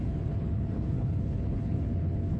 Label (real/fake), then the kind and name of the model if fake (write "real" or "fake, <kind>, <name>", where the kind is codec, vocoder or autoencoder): fake, codec, HILCodec